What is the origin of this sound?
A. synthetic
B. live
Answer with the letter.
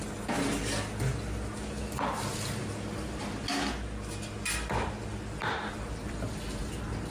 B